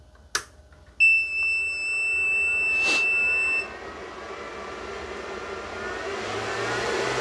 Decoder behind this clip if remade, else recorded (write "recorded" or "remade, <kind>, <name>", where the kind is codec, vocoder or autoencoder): recorded